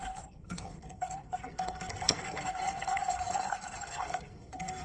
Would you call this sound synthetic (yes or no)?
yes